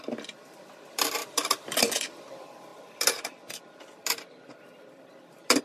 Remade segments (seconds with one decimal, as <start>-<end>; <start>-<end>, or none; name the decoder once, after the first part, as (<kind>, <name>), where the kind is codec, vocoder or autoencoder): 0.0-5.6 (vocoder, BigVGAN v2)